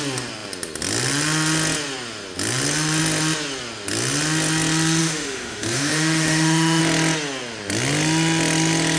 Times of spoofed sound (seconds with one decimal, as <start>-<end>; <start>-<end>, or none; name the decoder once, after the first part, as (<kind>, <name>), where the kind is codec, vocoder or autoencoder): 5.0-6.8 (autoencoder, DAC-VAE)